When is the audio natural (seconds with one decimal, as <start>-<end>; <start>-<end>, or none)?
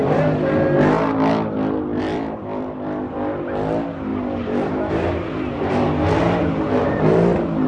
0.0-1.9; 3.1-4.1; 4.9-7.7